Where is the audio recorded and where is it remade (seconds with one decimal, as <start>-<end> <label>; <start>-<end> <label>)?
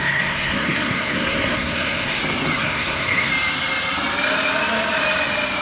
0.0-2.2 remade; 2.2-2.6 recorded; 2.6-3.3 remade; 3.3-5.6 recorded